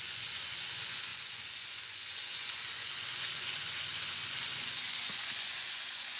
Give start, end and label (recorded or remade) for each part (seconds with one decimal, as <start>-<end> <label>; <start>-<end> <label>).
0.0-6.2 remade

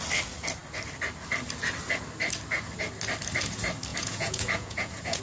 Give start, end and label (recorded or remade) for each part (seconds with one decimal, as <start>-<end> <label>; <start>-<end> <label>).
0.0-3.9 recorded; 3.9-5.2 remade

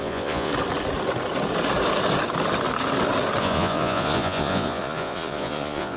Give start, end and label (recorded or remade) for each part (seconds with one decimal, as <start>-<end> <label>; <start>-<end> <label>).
0.0-0.5 remade; 0.5-3.4 recorded; 3.4-6.0 remade

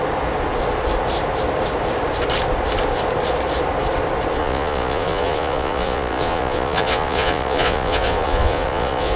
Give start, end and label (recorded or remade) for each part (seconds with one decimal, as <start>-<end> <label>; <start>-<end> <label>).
0.0-4.4 recorded; 4.4-9.2 remade

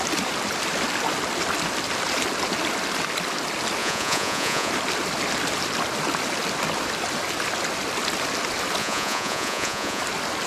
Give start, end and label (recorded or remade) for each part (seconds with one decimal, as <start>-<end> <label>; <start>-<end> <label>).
0.0-3.8 recorded; 3.8-4.7 remade; 4.7-8.8 recorded; 8.8-10.0 remade; 10.0-10.5 recorded

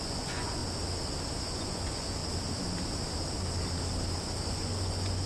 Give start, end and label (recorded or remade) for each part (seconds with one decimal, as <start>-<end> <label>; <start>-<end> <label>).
0.0-0.6 remade; 0.6-1.4 recorded; 1.4-2.2 remade; 2.2-4.5 recorded; 4.5-5.3 remade

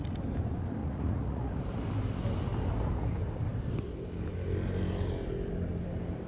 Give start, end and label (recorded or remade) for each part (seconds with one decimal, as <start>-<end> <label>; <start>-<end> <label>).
0.0-0.8 recorded; 0.8-1.6 remade; 1.6-6.3 recorded

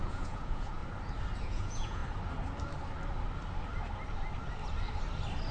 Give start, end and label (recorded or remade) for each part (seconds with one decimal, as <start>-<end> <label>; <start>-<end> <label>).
0.0-0.8 remade; 0.8-1.4 recorded; 1.4-2.0 remade; 2.0-5.5 recorded